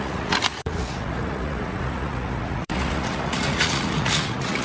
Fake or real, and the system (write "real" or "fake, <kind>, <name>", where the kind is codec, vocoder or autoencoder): fake, vocoder, Vocos